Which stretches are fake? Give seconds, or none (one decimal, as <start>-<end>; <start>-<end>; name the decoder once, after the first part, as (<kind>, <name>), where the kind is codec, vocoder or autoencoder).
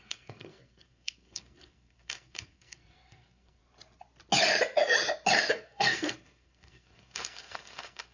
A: 0.0-3.6 (codec, SNAC); 5.5-8.1